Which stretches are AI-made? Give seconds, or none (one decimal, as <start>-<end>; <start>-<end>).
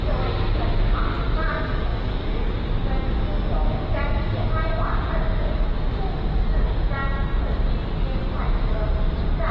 none